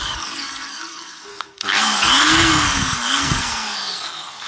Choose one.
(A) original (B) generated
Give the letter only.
B